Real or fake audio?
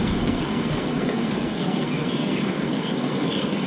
fake